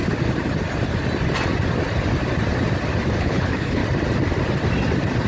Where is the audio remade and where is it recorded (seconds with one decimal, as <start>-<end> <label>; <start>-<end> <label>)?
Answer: 0.0-3.2 recorded; 3.2-3.8 remade; 3.8-5.3 recorded